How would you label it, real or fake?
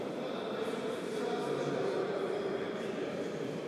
fake